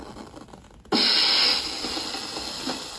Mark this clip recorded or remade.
recorded